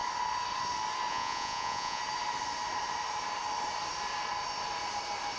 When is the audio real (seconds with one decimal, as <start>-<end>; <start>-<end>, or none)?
0.0-1.1; 2.0-5.4